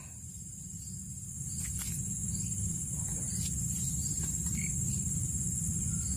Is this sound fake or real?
real